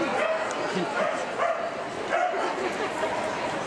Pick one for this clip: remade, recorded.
recorded